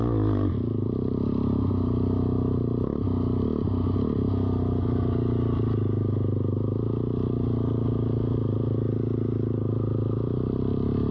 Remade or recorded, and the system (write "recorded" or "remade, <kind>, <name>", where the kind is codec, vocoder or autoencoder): recorded